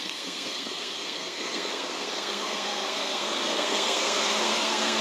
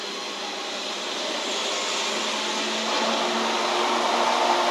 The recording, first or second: second